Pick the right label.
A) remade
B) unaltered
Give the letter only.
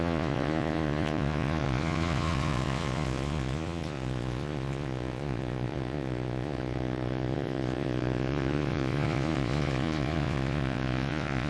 A